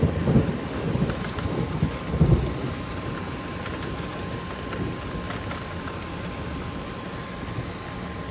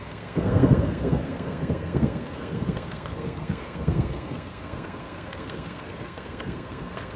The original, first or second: first